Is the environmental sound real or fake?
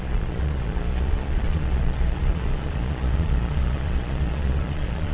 fake